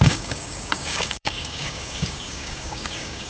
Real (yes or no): no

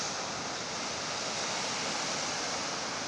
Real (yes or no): yes